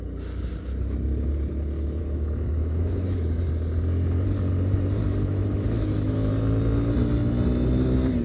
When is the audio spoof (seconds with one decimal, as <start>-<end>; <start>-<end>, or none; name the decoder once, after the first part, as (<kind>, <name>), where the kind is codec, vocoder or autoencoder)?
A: 2.0-3.5 (autoencoder, DAC-VAE); 5.0-6.3

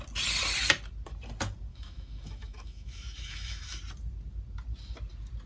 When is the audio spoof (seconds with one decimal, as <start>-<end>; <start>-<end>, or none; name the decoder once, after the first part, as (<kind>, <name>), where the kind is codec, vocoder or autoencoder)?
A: 1.7-3.8 (autoencoder, DAC-VAE)

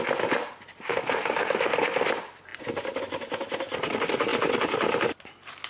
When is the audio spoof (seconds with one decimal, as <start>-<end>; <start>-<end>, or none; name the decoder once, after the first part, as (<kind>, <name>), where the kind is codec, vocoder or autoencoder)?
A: 0.9-2.1 (autoencoder, DAC-VAE)

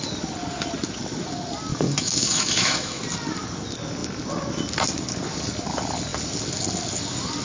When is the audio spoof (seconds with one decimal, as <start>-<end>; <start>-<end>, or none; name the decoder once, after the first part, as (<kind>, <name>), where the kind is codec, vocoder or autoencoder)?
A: 1.7-3.0 (autoencoder, DAC-VAE)